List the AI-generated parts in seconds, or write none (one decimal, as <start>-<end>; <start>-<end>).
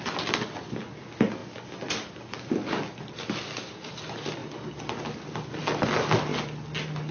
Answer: none